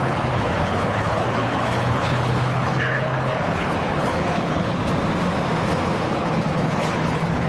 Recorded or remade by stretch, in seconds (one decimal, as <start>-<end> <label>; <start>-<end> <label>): 0.0-4.8 remade; 4.8-6.1 recorded; 6.1-7.5 remade